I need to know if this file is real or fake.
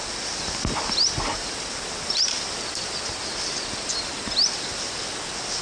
real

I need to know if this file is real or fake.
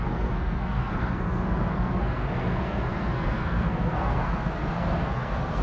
fake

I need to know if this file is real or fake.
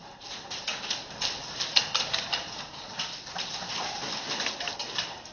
real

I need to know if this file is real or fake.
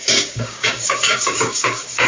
fake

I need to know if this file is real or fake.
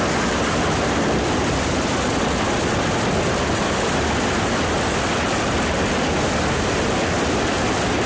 real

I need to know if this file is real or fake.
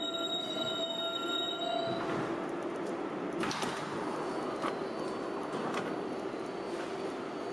real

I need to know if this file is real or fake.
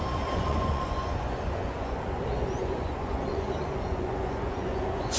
fake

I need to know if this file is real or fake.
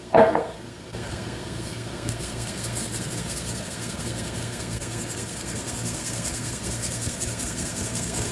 fake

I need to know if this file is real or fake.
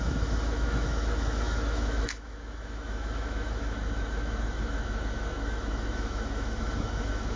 fake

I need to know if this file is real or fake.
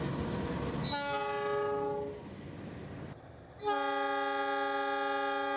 real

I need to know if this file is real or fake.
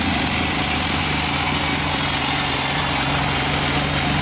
real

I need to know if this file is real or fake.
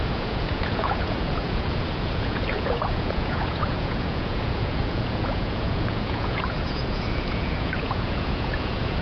fake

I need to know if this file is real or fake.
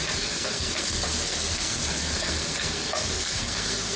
fake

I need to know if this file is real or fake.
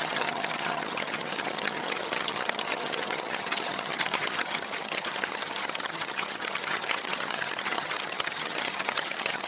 fake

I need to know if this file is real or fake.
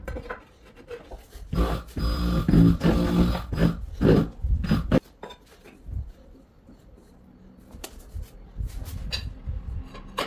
real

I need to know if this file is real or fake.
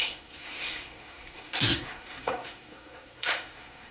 fake